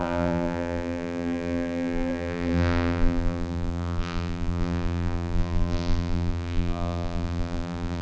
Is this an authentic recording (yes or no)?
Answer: no